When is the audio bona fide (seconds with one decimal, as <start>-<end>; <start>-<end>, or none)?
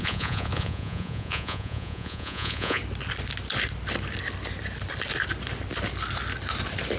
2.8-7.0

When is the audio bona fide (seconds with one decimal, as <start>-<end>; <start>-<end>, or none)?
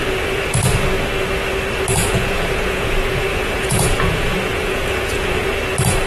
0.0-2.0; 5.4-6.1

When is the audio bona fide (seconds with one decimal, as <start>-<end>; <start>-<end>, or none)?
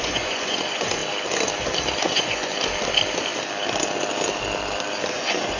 1.0-2.0; 2.5-5.1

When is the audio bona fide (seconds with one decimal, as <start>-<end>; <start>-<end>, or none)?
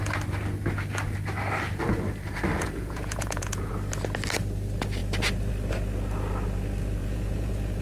0.0-2.5; 3.7-7.0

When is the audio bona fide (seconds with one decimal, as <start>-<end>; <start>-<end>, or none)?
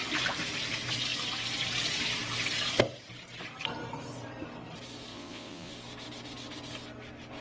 0.0-5.1; 5.7-7.4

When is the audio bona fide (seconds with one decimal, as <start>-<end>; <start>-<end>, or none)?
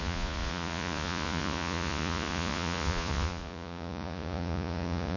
none